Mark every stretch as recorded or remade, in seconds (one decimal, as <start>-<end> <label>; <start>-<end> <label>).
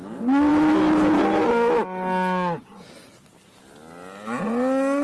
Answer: 0.0-5.0 recorded